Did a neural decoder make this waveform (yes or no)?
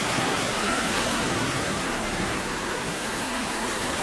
yes